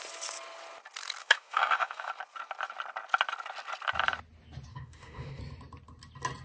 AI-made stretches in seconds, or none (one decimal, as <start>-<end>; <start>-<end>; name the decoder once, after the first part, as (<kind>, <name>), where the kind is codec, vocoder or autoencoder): 1.2-2.1 (autoencoder, DAC-VAE); 4.7-5.4